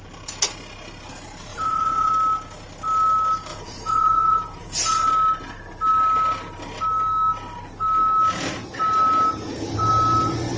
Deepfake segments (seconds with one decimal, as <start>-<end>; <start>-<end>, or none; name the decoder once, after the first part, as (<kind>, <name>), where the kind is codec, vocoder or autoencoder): 1.5-2.1 (vocoder, Vocos); 3.5-5.1